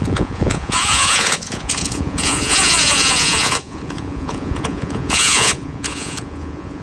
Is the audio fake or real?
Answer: fake